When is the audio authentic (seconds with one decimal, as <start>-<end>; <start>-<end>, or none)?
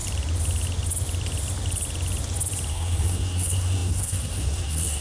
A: 0.0-2.7